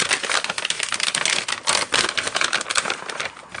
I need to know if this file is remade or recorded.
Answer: recorded